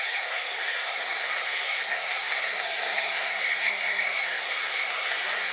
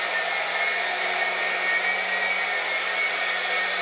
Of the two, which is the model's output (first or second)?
first